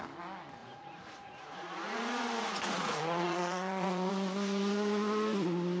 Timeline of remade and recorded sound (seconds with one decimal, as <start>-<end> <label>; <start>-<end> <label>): 0.0-0.6 recorded; 0.6-4.1 remade; 4.1-5.8 recorded